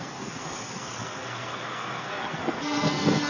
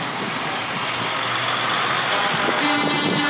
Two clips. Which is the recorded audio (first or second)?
second